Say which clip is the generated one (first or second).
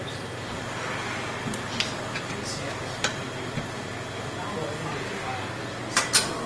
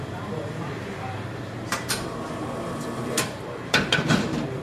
second